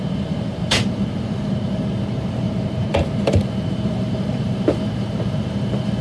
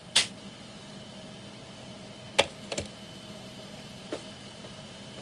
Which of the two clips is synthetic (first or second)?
first